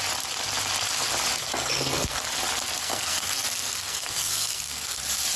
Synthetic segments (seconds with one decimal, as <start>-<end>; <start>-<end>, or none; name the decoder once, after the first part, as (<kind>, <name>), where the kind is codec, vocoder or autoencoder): 1.4-2.2 (codec, SNAC); 2.8-5.0